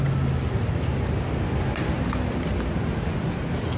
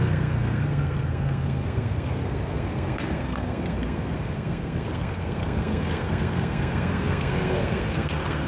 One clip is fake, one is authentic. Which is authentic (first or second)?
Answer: first